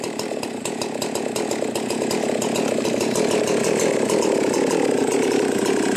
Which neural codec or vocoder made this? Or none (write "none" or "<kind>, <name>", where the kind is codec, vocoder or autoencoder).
none